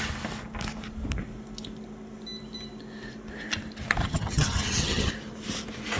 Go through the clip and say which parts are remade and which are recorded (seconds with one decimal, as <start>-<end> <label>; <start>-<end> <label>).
0.0-4.0 recorded; 4.0-5.1 remade; 5.1-6.0 recorded